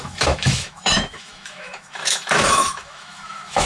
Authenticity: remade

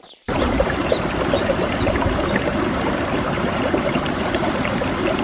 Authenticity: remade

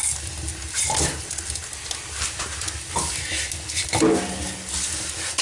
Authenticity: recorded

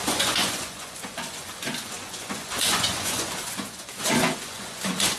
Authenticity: remade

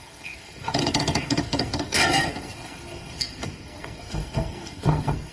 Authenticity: remade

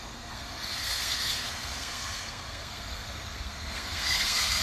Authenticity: remade